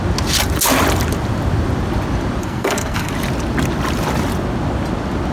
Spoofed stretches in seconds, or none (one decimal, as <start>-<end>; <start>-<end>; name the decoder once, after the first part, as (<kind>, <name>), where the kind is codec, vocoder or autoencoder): 2.4-3.1 (codec, SNAC)